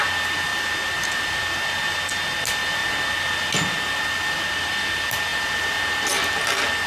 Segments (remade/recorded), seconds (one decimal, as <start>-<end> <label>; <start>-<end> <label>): 0.0-6.9 recorded